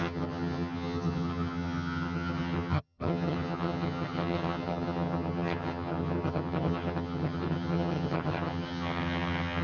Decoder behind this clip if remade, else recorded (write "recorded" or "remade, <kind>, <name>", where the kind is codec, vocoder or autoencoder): remade, vocoder, HiFi-GAN